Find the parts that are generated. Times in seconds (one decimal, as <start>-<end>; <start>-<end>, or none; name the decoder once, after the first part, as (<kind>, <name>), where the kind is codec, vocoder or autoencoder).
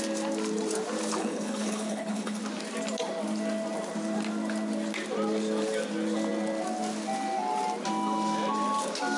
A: 1.2-2.4 (codec, HILCodec)